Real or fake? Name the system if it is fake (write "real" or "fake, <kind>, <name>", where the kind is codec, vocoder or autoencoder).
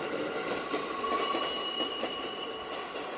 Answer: real